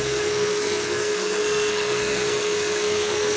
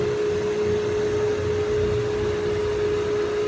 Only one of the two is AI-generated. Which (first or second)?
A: first